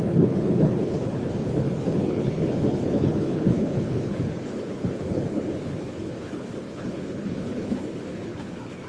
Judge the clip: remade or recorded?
remade